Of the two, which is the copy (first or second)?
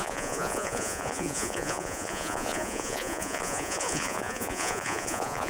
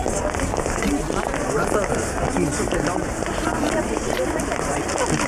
first